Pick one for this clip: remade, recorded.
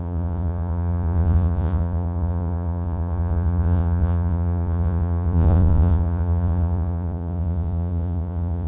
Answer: remade